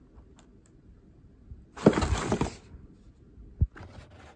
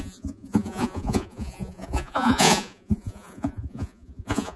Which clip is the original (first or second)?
first